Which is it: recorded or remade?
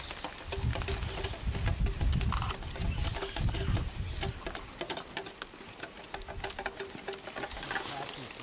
recorded